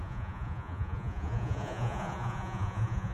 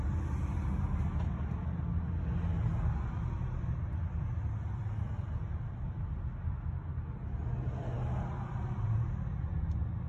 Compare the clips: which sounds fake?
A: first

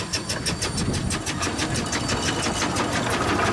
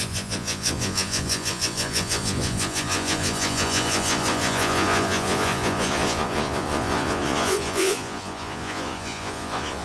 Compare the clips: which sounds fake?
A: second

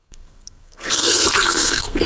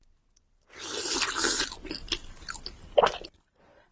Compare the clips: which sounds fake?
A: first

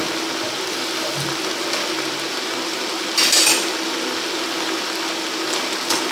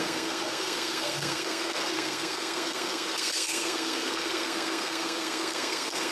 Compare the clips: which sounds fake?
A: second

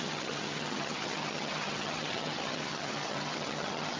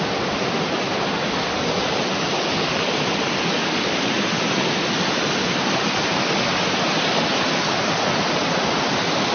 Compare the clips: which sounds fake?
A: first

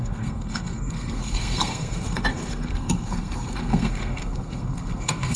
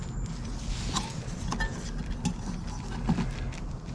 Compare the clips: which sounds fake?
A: first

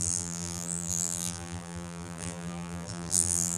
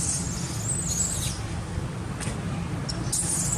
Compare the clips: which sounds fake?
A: first